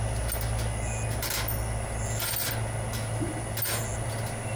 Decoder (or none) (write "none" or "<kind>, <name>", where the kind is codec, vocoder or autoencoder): none